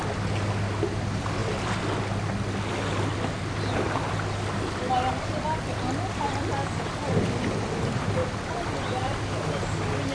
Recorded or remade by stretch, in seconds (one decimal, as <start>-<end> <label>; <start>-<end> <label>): 0.0-8.2 recorded; 8.2-8.8 remade; 8.8-10.1 recorded